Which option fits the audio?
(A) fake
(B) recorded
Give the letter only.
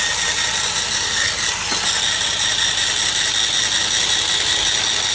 B